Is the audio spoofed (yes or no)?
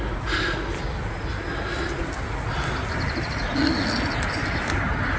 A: no